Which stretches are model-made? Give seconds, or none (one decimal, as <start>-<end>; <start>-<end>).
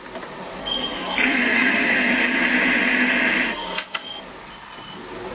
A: 0.6-2.1; 3.5-4.2